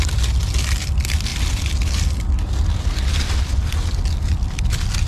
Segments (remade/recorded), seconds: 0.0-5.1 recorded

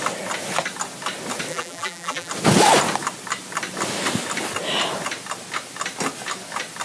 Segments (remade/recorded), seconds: 0.0-1.5 recorded; 1.5-2.3 remade; 2.3-6.8 recorded

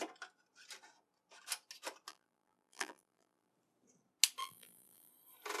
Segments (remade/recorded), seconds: 0.0-2.1 recorded; 2.1-3.5 remade; 3.5-4.4 recorded; 4.4-5.1 remade; 5.1-5.6 recorded

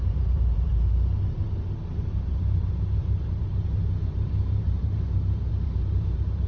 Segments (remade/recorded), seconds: 0.0-0.7 remade; 0.7-2.3 recorded; 2.3-6.5 remade

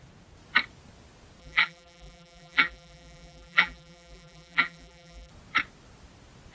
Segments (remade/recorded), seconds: 0.0-1.4 recorded; 1.4-5.3 remade; 5.3-6.5 recorded

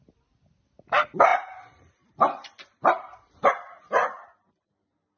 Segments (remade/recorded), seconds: 0.0-1.3 recorded; 1.3-3.5 remade; 3.5-5.2 recorded

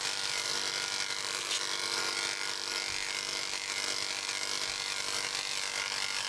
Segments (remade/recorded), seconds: 0.0-6.3 remade